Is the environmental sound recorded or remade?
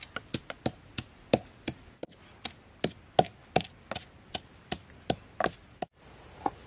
recorded